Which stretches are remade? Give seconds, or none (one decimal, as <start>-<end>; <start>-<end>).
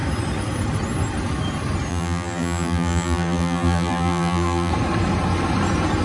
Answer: 1.9-4.7